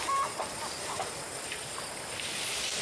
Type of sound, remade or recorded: recorded